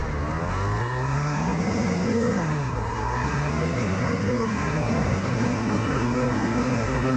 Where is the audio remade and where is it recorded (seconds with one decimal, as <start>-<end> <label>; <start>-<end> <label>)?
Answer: 0.0-0.8 recorded; 0.8-7.2 remade

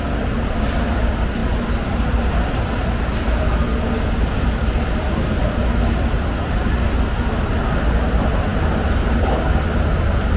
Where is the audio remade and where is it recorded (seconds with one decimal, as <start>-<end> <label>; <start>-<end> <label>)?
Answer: 0.0-10.4 recorded